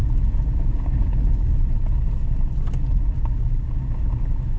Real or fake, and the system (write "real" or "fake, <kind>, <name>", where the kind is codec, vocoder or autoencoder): real